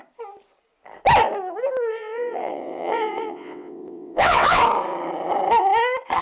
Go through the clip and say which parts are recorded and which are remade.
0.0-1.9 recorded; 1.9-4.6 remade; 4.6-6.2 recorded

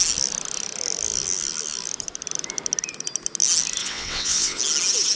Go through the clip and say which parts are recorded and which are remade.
0.0-3.8 recorded; 3.8-4.6 remade; 4.6-5.2 recorded